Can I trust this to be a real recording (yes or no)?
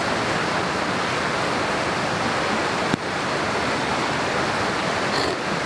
yes